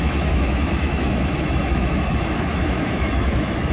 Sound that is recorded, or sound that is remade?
remade